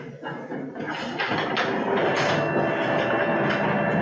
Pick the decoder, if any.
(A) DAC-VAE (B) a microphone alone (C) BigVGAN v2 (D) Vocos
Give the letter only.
B